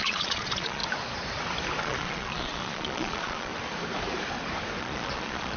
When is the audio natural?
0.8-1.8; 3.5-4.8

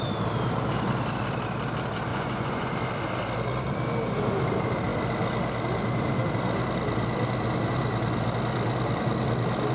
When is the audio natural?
0.0-2.1; 2.7-9.7